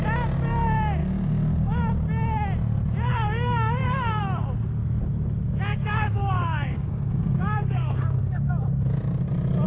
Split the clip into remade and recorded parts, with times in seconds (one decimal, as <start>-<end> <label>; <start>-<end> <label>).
0.0-1.0 recorded; 1.0-1.8 remade; 1.8-3.1 recorded; 3.1-4.2 remade; 4.2-5.7 recorded; 5.7-8.5 remade; 8.5-9.7 recorded